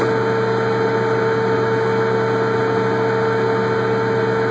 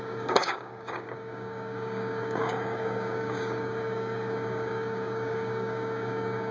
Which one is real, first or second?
first